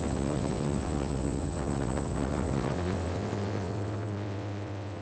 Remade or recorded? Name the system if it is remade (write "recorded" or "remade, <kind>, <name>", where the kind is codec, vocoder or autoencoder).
remade, vocoder, WaveNeXt